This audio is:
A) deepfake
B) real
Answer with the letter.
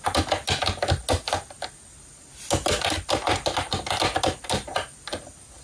B